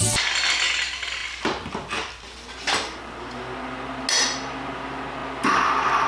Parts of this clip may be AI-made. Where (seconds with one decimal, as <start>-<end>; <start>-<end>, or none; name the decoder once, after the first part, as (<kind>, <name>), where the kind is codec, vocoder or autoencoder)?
none